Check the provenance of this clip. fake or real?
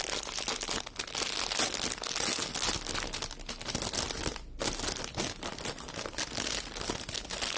real